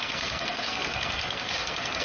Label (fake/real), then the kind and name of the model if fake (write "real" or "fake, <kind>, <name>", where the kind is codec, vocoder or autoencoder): fake, codec, SNAC